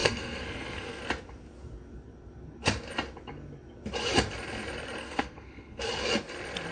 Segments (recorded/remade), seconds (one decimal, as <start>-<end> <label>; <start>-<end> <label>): 0.0-1.0 remade; 1.0-5.0 recorded; 5.0-5.8 remade; 5.8-6.7 recorded